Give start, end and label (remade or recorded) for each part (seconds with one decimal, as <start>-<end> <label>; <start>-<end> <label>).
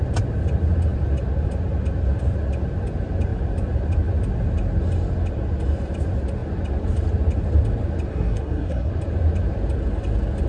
0.0-8.1 recorded; 8.1-8.9 remade; 8.9-10.5 recorded